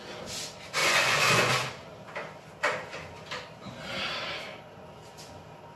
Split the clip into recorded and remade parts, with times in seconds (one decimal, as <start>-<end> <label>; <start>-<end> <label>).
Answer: 0.0-0.8 recorded; 0.8-1.5 remade; 1.5-5.8 recorded